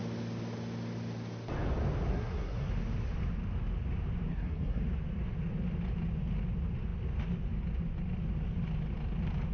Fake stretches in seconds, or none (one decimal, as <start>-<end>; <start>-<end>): 2.1-2.7; 4.3-4.8